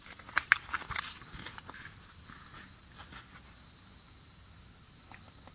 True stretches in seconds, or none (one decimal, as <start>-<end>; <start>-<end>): 0.0-5.5